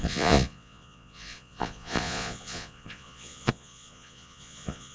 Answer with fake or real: fake